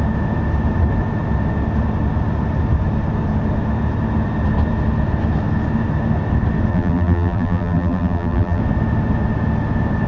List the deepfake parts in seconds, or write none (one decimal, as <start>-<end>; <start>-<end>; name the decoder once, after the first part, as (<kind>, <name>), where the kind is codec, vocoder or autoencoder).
6.7-8.6 (vocoder, BigVGAN v2)